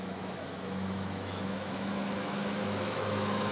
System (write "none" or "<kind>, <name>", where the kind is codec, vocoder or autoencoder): autoencoder, DAC-VAE